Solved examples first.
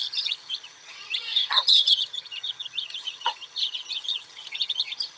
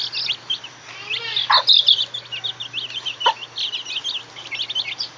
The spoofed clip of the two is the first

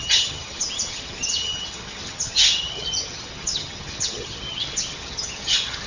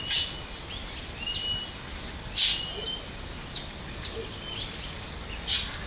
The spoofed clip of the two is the first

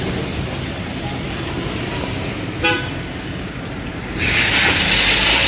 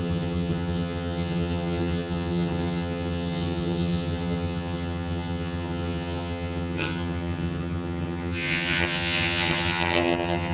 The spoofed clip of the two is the second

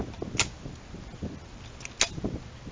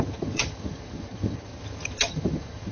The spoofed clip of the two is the second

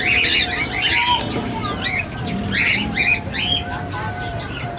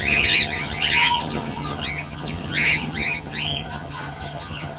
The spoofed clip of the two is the second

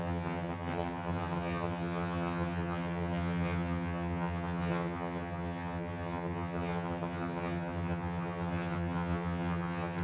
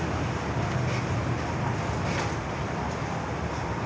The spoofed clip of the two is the first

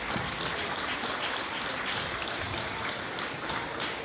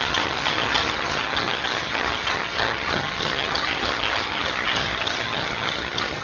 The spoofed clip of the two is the second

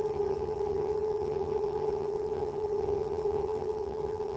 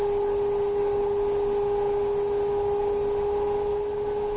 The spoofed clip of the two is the first